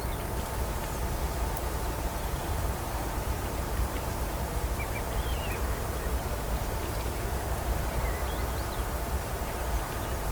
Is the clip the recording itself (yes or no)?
no